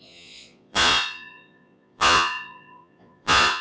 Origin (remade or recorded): remade